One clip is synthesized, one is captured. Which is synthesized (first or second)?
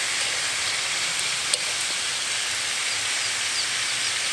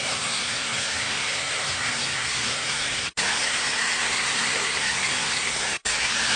second